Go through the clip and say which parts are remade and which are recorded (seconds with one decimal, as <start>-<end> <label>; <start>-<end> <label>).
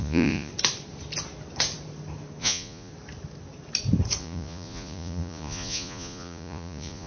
0.0-0.5 remade; 0.5-2.4 recorded; 2.4-2.9 remade; 2.9-4.2 recorded; 4.2-7.1 remade